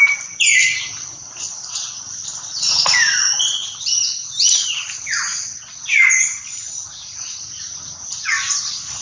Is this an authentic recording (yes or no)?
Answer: yes